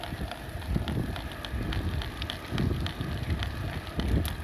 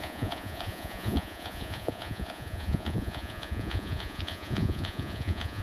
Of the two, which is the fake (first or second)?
second